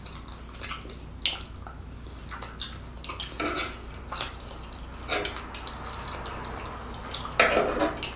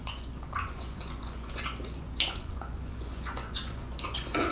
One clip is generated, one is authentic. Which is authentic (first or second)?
first